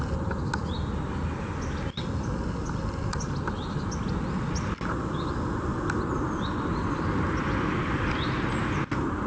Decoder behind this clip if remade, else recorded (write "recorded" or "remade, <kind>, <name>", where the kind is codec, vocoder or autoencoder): recorded